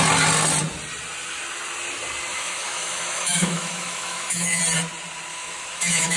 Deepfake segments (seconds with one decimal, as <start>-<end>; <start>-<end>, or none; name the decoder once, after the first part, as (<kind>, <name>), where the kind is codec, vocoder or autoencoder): 2.3-4.6 (autoencoder, DAC-VAE); 5.3-6.2

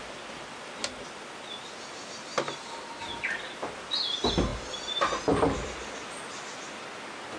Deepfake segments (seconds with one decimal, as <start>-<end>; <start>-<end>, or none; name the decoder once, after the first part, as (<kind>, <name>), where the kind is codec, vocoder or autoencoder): none

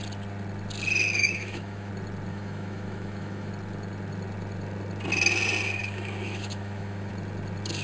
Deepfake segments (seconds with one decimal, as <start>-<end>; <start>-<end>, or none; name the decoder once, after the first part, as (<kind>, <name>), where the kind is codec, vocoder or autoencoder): 1.2-1.9 (autoencoder, DAC-VAE); 2.3-3.5; 5.8-7.1

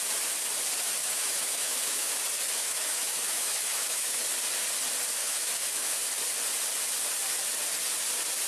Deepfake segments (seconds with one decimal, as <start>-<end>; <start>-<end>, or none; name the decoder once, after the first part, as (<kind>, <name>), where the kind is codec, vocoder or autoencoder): 1.0-2.1 (autoencoder, DAC-VAE); 2.6-4.2; 5.2-6.0